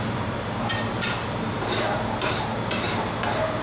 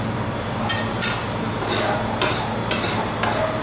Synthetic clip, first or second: first